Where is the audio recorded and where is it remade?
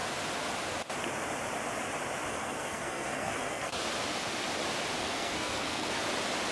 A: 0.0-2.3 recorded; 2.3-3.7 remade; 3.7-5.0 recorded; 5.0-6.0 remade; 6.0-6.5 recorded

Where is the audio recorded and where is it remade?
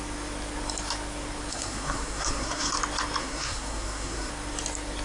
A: 0.0-1.5 recorded; 1.5-2.7 remade; 2.7-3.2 recorded; 3.2-4.3 remade; 4.3-5.0 recorded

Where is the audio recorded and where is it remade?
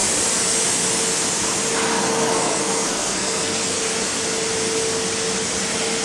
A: 0.0-2.0 recorded; 2.0-3.8 remade; 3.8-6.0 recorded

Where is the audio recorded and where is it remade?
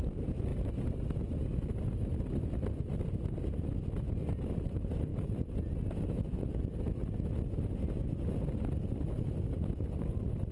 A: 0.0-10.5 recorded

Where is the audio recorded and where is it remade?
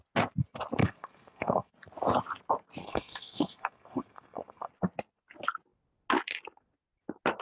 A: 0.0-0.8 recorded; 0.8-1.7 remade; 1.7-2.8 recorded; 2.8-4.7 remade; 4.7-7.4 recorded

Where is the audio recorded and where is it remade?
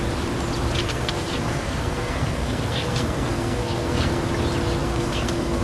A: 0.0-0.8 recorded; 0.8-4.2 remade; 4.2-4.8 recorded; 4.8-5.6 remade